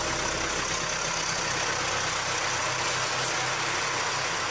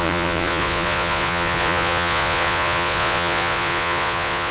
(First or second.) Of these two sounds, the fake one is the second